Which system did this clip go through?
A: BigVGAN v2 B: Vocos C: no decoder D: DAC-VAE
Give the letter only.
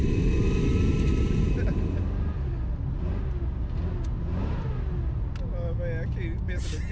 C